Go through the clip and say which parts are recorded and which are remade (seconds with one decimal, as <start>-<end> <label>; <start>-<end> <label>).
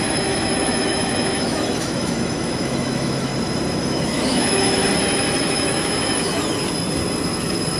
0.0-3.3 remade; 3.3-3.8 recorded; 3.8-4.8 remade; 4.8-5.4 recorded; 5.4-6.3 remade; 6.3-7.8 recorded